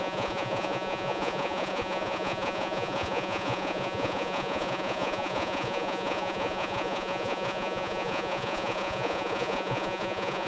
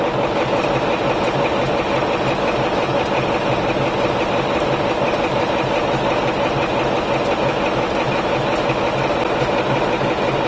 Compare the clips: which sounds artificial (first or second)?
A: first